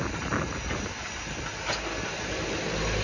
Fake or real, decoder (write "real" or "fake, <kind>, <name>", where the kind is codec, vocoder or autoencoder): real